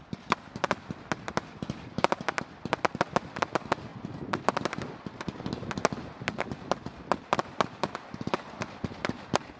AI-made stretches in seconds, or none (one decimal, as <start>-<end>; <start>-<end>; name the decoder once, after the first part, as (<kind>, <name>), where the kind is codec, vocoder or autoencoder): none